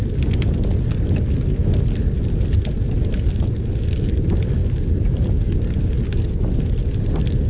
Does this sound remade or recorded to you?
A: recorded